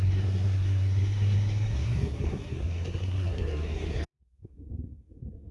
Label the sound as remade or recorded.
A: remade